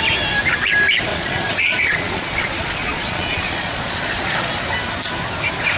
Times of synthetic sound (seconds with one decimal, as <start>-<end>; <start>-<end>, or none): 1.1-4.5